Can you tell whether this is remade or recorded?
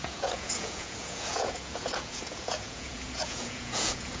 remade